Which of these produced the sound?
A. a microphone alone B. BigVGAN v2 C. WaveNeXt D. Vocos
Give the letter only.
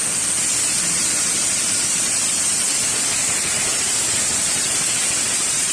A